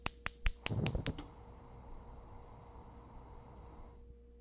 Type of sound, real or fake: real